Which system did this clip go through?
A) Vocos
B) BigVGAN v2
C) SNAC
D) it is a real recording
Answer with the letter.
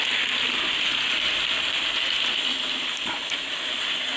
B